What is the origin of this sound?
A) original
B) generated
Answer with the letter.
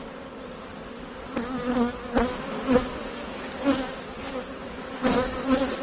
A